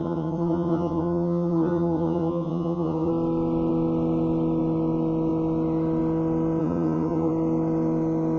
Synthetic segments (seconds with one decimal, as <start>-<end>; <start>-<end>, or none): 0.0-3.1; 6.6-7.3